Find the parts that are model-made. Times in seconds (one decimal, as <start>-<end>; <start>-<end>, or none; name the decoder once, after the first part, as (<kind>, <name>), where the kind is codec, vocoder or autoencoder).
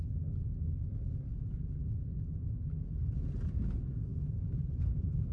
4.1-5.3 (vocoder, BigVGAN v2)